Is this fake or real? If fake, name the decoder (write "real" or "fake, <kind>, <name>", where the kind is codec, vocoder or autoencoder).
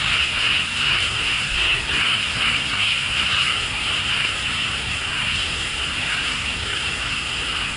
fake, codec, SNAC